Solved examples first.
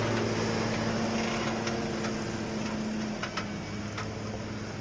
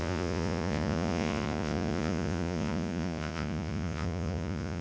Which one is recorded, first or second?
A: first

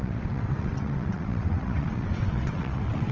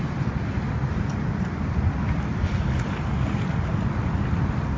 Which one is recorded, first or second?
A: second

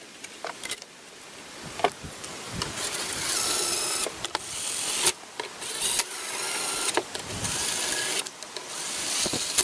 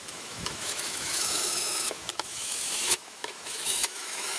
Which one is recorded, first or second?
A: first